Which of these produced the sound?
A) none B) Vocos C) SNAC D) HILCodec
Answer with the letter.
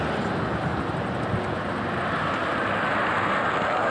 A